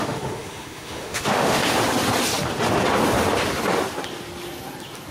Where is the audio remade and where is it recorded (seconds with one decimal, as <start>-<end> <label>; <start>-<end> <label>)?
0.0-1.6 remade; 1.6-5.1 recorded